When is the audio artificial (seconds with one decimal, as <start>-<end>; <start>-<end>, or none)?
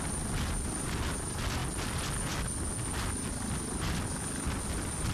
none